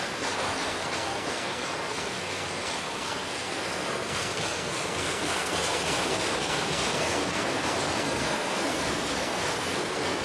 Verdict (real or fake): fake